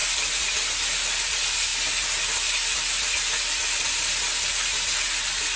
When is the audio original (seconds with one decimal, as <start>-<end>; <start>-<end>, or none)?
0.0-5.6